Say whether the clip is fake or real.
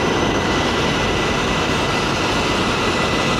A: real